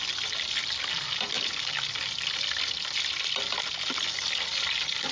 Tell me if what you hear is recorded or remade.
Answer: recorded